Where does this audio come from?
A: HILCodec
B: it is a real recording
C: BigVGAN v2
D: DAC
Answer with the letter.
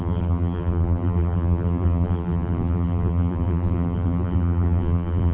C